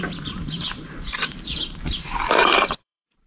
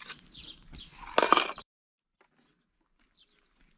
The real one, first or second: second